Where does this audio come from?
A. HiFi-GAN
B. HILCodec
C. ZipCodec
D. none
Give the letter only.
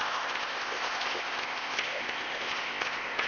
C